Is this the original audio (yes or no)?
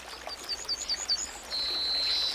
yes